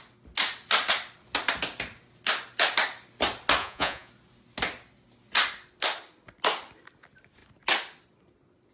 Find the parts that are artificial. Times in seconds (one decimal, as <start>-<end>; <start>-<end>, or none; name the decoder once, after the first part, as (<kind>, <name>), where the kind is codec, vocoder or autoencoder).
3.6-4.1 (vocoder, Vocos)